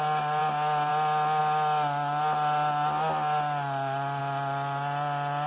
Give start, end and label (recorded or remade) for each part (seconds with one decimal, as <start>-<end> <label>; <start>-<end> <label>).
0.0-5.5 recorded